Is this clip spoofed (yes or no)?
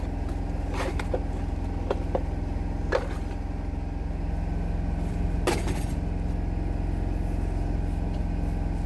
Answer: no